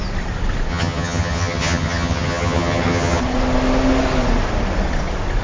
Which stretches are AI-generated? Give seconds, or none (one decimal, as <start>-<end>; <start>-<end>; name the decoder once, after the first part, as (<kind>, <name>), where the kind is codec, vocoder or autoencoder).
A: 0.7-3.2 (vocoder, HiFi-GAN)